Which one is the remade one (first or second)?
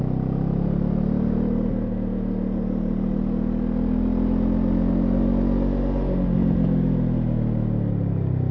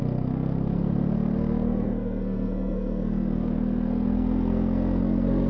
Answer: second